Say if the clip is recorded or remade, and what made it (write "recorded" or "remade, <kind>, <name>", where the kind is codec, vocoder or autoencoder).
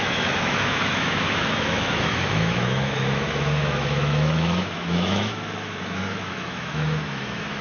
remade, autoencoder, DAC-VAE